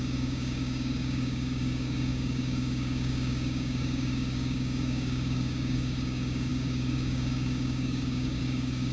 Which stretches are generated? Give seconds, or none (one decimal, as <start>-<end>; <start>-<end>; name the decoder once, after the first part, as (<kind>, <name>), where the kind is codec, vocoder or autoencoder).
0.0-8.9 (codec, DAC)